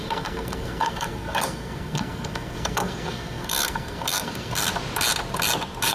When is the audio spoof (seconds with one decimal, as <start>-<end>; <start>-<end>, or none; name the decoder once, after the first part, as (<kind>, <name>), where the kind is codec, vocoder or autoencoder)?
0.0-4.7 (codec, SNAC)